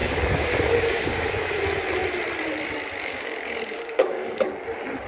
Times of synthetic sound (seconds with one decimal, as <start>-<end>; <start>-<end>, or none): 0.0-1.6; 3.0-4.5